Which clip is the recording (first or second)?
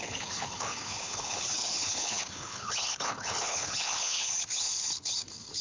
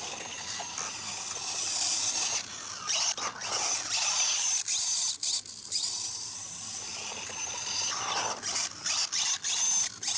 second